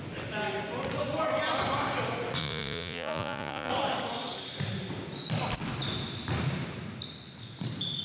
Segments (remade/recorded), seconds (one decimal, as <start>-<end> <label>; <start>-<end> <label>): 0.0-2.4 recorded; 2.4-3.7 remade; 3.7-8.0 recorded